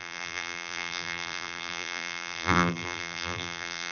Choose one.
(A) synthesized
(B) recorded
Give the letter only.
A